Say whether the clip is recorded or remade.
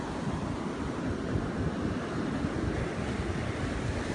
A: recorded